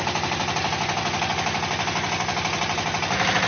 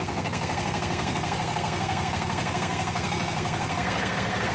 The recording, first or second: first